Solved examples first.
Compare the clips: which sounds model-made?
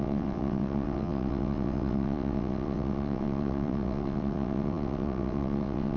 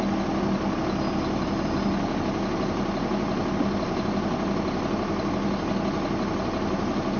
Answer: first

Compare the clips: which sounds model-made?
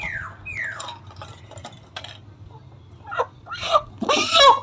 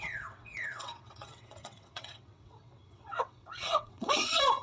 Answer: second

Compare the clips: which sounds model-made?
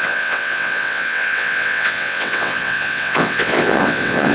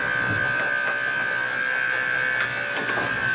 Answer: first